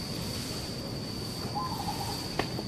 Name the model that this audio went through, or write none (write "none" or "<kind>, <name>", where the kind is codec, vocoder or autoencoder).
none